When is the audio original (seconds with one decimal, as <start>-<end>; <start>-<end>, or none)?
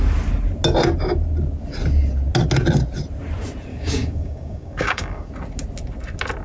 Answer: 0.0-3.7; 5.3-6.4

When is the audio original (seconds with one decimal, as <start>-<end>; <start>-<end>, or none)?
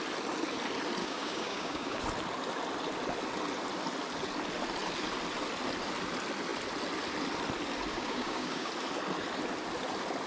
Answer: 0.0-1.0; 2.0-7.9; 8.7-10.3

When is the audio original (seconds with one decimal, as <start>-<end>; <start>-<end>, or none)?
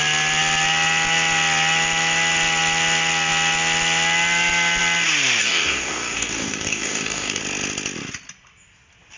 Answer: 0.0-5.4; 7.4-9.2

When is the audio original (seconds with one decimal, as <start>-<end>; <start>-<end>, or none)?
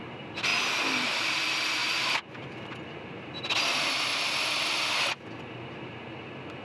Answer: 0.0-6.6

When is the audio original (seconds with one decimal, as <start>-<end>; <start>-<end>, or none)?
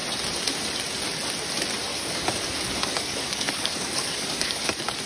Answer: 0.0-1.9; 4.6-5.1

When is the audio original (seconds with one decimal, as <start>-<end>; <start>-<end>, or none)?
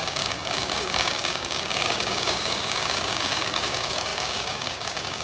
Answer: none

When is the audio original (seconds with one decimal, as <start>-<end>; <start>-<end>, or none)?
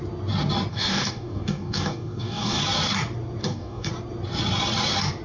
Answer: 0.0-0.7; 2.6-3.4; 3.9-5.2